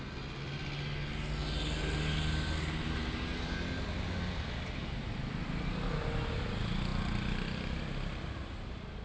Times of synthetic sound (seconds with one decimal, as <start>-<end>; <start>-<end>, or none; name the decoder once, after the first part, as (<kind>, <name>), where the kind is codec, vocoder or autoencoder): none